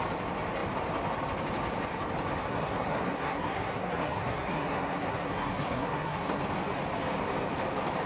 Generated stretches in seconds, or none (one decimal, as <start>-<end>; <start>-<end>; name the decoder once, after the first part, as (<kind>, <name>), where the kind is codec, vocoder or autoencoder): 2.4-6.4 (codec, SNAC)